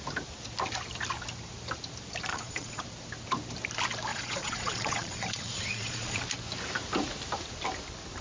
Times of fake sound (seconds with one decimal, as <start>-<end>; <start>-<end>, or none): 2.3-2.8; 4.1-6.2